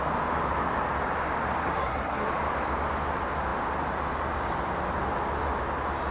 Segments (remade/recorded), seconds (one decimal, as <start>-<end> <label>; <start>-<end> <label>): 0.0-1.6 recorded; 1.6-2.3 remade; 2.3-6.1 recorded